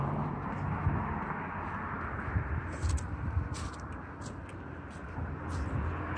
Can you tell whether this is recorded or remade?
recorded